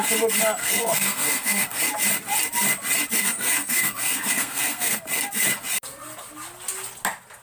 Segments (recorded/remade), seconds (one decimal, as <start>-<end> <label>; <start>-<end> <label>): 0.0-0.6 recorded; 0.6-1.8 remade; 1.8-3.2 recorded; 3.2-5.0 remade; 5.0-7.4 recorded

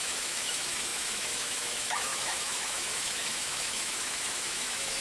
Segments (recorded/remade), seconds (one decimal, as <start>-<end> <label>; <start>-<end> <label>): 0.0-5.0 remade

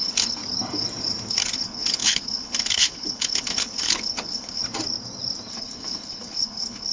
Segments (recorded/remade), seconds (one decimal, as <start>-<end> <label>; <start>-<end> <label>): 0.0-0.4 remade; 0.4-1.3 recorded; 1.3-4.6 remade; 4.6-5.5 recorded; 5.5-6.9 remade

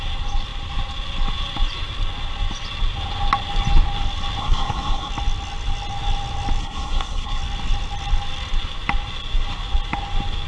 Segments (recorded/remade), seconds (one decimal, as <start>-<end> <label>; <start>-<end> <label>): 0.0-4.4 recorded; 4.4-5.1 remade; 5.1-6.6 recorded; 6.6-7.4 remade; 7.4-10.5 recorded

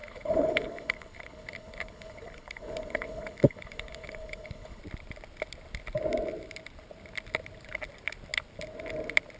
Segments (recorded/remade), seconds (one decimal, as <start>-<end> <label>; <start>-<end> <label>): 0.0-4.8 remade; 4.8-9.4 recorded

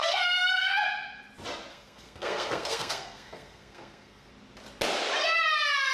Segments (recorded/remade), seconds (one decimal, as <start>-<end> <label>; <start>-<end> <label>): 0.0-0.7 remade; 0.7-1.7 recorded; 1.7-4.3 remade; 4.3-5.9 recorded

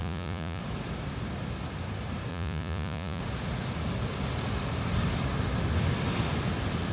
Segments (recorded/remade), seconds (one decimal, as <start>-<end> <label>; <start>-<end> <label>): 0.0-0.6 remade; 0.6-2.3 recorded; 2.3-3.2 remade; 3.2-6.9 recorded

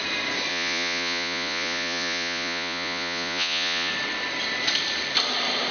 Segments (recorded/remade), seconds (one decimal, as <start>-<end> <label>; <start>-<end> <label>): 0.0-0.5 recorded; 0.5-3.9 remade; 3.9-5.7 recorded